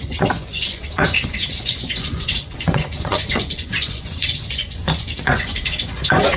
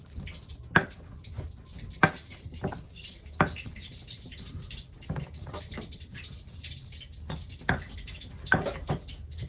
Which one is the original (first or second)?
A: second